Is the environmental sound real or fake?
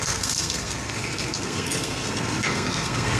fake